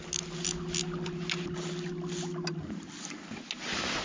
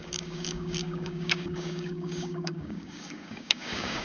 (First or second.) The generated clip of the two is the second